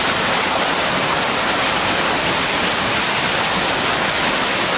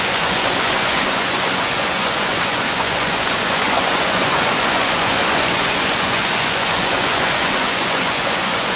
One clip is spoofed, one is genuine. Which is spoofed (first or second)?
second